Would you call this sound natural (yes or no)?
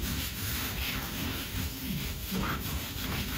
no